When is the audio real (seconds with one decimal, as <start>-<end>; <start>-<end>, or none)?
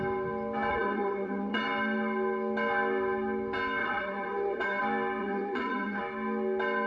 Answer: 0.0-0.7; 1.6-3.8; 4.8-5.2; 6.0-6.9